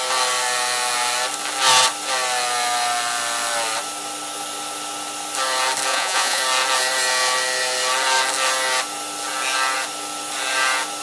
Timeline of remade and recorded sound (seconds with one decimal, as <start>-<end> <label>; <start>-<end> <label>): 0.0-5.9 recorded; 5.9-6.4 remade; 6.4-11.0 recorded